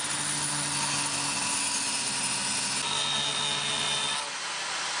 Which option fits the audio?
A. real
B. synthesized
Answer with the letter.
A